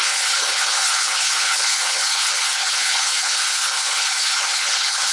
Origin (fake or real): fake